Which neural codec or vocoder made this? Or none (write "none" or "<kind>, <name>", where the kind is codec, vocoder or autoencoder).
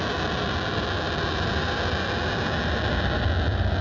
none